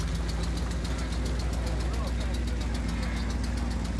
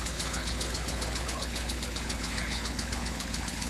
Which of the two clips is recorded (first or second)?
first